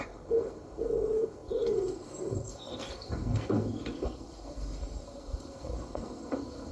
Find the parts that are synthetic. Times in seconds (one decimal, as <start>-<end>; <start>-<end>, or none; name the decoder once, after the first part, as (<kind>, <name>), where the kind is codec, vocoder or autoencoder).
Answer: 0.0-6.7 (codec, SNAC)